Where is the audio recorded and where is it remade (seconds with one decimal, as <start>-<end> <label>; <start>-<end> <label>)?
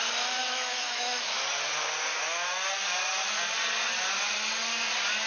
0.0-0.4 recorded; 0.4-1.3 remade; 1.3-5.3 recorded